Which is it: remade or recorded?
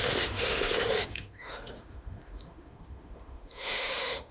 remade